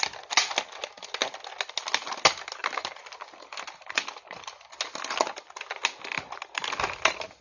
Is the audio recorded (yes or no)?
yes